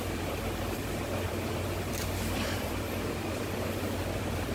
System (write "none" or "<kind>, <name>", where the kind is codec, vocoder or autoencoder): vocoder, BigVGAN v2